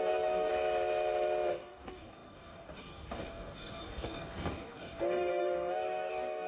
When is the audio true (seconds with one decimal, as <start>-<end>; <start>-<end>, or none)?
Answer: 0.5-1.5